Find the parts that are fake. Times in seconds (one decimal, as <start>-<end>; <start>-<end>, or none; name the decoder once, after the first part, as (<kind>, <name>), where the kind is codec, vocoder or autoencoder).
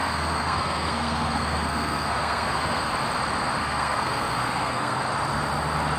0.0-2.9 (codec, SNAC); 3.6-5.0